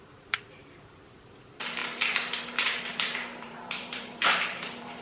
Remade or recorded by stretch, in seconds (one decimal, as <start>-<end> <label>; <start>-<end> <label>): 0.0-5.0 remade